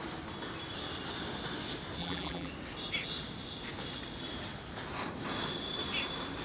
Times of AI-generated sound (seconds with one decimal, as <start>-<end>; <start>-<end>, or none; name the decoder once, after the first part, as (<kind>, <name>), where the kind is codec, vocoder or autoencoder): 2.0-2.5 (vocoder, BigVGAN v2)